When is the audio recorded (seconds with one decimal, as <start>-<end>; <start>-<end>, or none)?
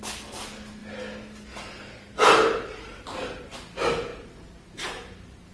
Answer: 0.0-4.1